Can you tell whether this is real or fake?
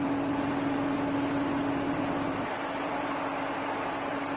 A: real